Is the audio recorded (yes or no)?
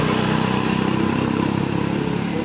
yes